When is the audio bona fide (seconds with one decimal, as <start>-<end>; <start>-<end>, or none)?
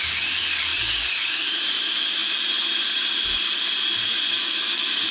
none